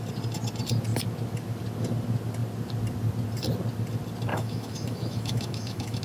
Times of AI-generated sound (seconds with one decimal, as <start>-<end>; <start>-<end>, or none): 4.3-6.0